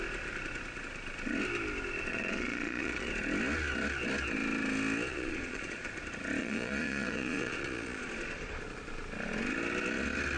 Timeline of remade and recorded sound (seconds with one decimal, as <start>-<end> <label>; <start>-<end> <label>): 0.0-2.1 recorded; 2.1-3.1 remade; 3.1-5.1 recorded; 5.1-5.9 remade; 5.9-6.4 recorded; 6.4-8.6 remade; 8.6-10.4 recorded